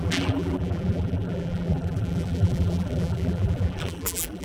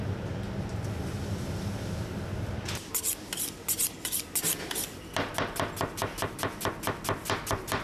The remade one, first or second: first